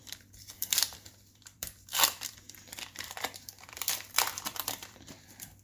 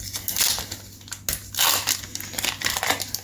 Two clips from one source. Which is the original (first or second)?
second